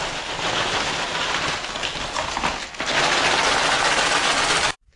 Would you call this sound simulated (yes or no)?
no